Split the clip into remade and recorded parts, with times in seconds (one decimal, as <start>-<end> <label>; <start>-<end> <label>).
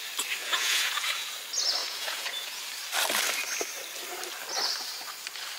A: 0.0-0.4 recorded; 0.4-1.3 remade; 1.3-1.8 recorded; 1.8-2.6 remade; 2.6-5.6 recorded